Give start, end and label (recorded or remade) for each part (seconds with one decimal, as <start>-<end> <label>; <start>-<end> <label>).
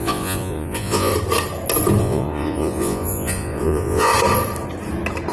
0.0-1.1 remade; 1.1-2.0 recorded; 2.0-4.1 remade; 4.1-5.3 recorded